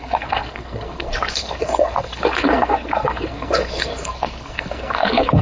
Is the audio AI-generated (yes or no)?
yes